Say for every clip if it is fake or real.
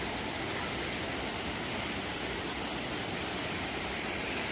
real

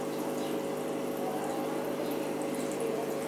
real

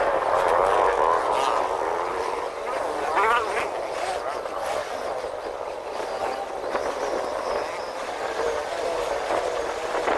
real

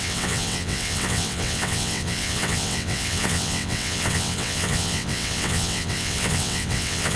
fake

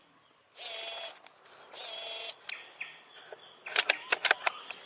real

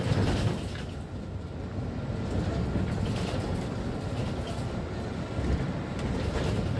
real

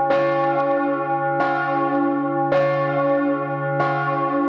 real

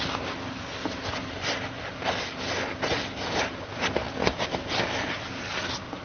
real